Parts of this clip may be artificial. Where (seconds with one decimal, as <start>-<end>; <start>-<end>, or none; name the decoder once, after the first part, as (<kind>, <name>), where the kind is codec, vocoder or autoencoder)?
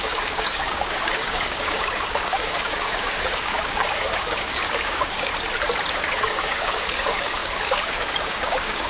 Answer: 0.0-5.3 (codec, DAC); 5.9-8.9